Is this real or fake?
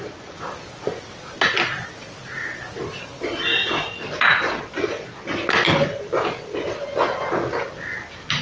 real